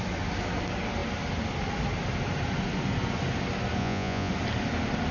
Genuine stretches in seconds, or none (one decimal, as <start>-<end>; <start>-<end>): 0.0-3.8; 4.3-5.1